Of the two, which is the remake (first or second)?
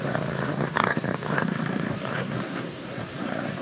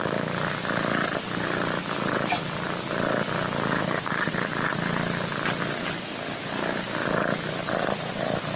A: first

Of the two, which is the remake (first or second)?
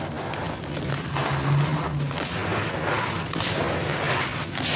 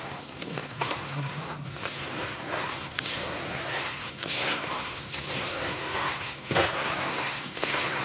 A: second